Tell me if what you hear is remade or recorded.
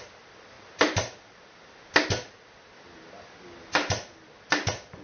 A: recorded